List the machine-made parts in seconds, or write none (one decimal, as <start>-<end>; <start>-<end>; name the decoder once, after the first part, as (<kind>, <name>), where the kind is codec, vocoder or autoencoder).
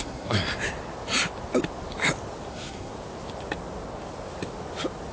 0.0-0.4 (codec, SNAC); 2.5-2.9